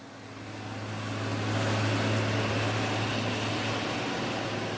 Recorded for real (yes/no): yes